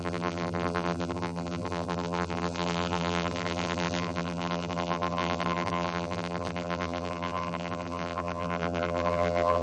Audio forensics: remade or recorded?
remade